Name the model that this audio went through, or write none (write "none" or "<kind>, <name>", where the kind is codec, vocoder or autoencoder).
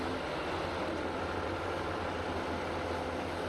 none